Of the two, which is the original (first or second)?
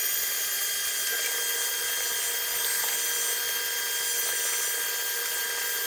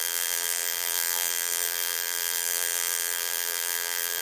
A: first